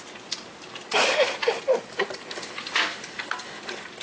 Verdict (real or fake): real